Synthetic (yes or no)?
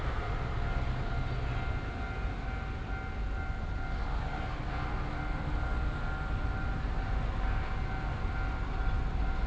no